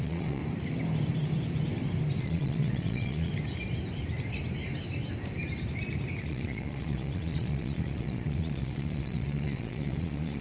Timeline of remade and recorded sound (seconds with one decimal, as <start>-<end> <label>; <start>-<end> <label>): 0.0-0.4 remade; 0.4-2.2 recorded; 2.2-3.3 remade; 3.3-6.2 recorded; 6.2-10.4 remade